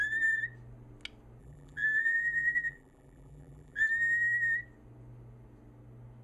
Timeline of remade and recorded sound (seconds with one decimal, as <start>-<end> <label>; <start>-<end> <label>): 0.0-1.4 recorded; 1.4-3.8 remade; 3.8-6.2 recorded